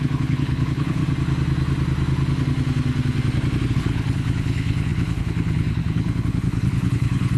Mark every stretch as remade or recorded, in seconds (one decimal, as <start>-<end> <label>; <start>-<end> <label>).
0.0-1.0 remade; 1.0-3.7 recorded; 3.7-7.4 remade